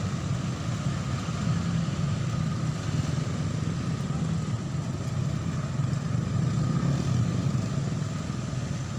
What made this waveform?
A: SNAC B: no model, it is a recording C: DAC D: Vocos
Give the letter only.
B